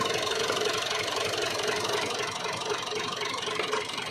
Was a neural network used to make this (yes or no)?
yes